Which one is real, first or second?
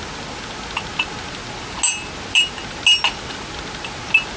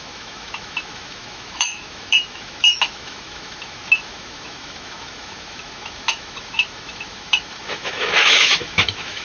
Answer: first